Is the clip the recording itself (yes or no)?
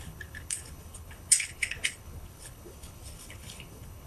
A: no